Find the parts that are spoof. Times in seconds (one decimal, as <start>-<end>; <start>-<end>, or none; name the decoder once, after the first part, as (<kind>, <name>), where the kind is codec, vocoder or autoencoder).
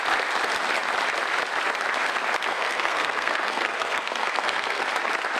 2.5-4.9 (codec, SNAC)